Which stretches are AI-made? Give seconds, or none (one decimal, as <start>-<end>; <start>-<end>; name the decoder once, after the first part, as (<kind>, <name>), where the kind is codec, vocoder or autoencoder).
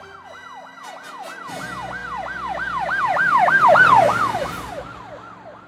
none